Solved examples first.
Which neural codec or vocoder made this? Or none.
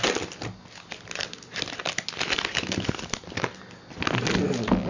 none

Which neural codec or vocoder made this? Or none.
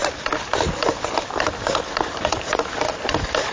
vocoder, BigVGAN v2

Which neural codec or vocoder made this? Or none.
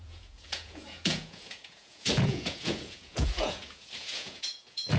vocoder, Vocos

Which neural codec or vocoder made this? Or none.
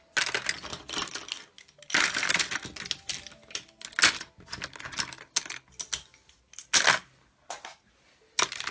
none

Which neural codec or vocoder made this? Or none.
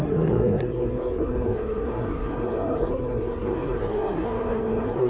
codec, SNAC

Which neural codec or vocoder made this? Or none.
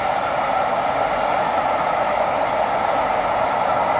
none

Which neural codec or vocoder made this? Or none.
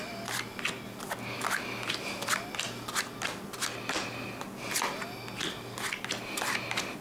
none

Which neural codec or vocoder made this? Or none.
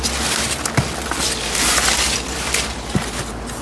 none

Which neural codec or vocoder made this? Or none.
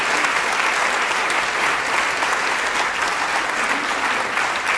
none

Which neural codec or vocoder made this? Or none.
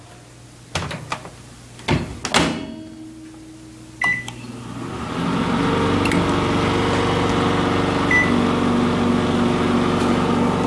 none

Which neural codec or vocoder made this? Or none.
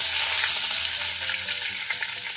none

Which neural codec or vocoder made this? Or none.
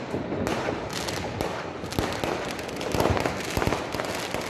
none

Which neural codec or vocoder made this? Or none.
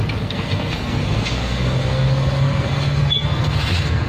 codec, SNAC